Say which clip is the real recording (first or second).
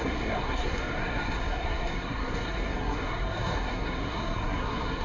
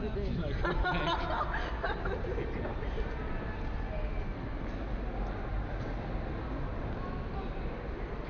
second